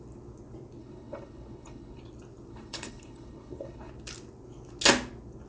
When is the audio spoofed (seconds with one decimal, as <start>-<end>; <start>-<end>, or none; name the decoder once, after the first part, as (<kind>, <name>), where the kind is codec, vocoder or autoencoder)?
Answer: 0.8-2.0 (codec, HILCodec); 2.5-3.9